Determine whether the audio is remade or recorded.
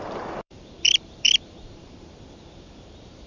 remade